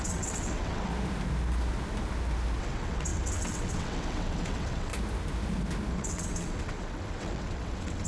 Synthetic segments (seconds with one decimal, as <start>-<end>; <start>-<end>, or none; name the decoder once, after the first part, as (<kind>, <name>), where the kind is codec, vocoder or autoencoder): 0.0-0.9 (vocoder, WaveNeXt); 2.6-4.9; 5.9-8.1